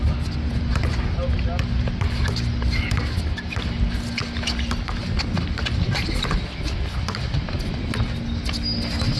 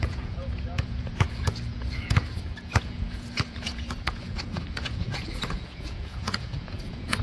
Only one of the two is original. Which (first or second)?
first